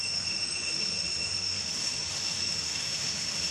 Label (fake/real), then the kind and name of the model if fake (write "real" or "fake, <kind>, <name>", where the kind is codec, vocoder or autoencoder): fake, autoencoder, DAC-VAE